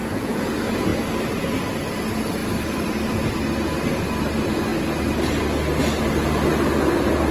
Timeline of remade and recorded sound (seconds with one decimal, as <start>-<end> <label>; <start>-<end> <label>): 0.0-0.5 remade; 0.5-7.3 recorded